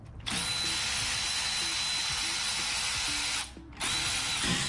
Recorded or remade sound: recorded